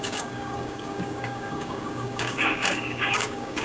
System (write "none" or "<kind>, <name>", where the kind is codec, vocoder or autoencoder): codec, DAC